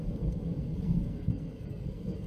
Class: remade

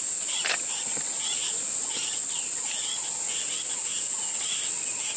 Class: recorded